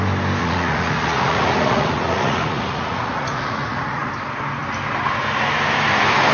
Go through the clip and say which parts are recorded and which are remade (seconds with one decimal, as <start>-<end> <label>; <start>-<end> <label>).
0.0-0.4 recorded; 0.4-4.1 remade; 4.1-6.3 recorded